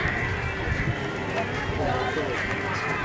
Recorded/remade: recorded